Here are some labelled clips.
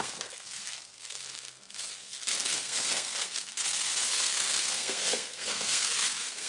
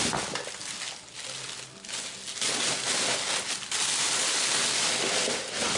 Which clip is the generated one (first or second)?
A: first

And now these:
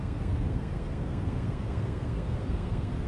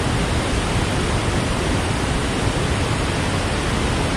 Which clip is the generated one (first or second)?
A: first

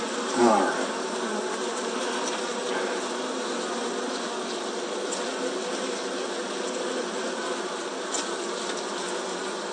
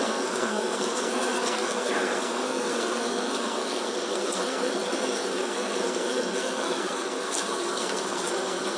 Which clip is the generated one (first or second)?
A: second